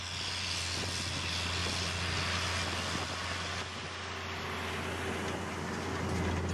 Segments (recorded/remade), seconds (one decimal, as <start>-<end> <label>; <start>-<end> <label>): 0.0-6.5 recorded

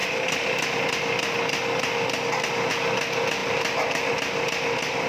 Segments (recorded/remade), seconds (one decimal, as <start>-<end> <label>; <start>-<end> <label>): 0.0-3.4 recorded; 3.4-4.1 remade; 4.1-5.1 recorded

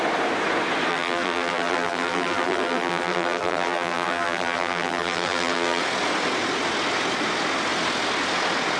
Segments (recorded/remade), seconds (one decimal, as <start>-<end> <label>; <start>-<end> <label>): 0.0-0.9 recorded; 0.9-5.8 remade; 5.8-8.8 recorded

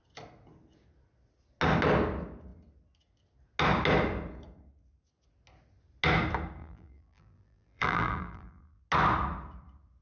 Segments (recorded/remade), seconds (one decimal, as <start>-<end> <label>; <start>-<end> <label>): 0.0-6.6 recorded; 6.6-8.8 remade; 8.8-10.0 recorded

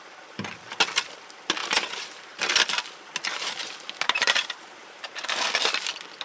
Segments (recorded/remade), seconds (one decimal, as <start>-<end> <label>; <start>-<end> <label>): 0.0-1.6 recorded; 1.6-2.4 remade; 2.4-3.3 recorded; 3.3-5.4 remade; 5.4-6.2 recorded